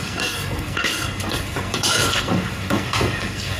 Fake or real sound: fake